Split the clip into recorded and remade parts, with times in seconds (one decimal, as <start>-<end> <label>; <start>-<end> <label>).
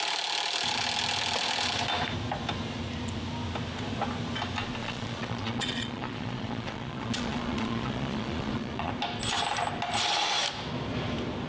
0.0-4.8 recorded; 4.8-8.9 remade; 8.9-11.5 recorded